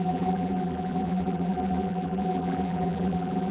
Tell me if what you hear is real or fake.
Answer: fake